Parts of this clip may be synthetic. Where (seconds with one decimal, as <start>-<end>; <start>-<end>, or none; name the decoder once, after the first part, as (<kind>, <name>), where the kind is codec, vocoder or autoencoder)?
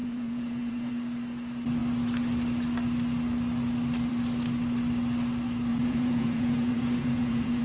0.0-0.9 (vocoder, Vocos); 5.7-7.6